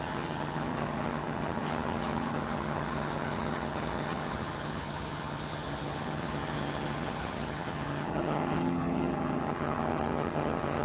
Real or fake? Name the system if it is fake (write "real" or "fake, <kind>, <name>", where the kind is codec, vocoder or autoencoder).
fake, vocoder, HiFi-GAN